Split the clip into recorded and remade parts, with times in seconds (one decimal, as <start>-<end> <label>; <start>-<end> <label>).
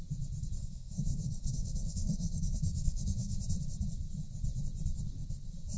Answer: 0.0-0.6 recorded; 0.6-3.4 remade; 3.4-5.8 recorded